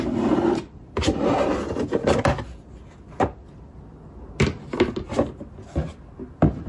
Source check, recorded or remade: recorded